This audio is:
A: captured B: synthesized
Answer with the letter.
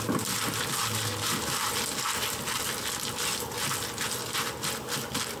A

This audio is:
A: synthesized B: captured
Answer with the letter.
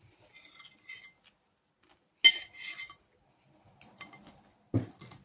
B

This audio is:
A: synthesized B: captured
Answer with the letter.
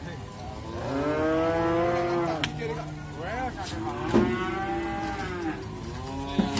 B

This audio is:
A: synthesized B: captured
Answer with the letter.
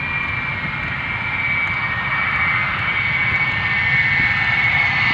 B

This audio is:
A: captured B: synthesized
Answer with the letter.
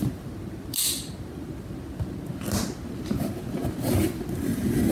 A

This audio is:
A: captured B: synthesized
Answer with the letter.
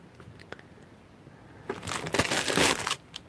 A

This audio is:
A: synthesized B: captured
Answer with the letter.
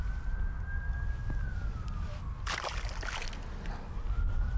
B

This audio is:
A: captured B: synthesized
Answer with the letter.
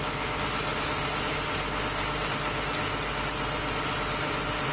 A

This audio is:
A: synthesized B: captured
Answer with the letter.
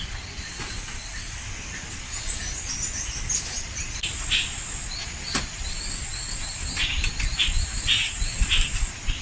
B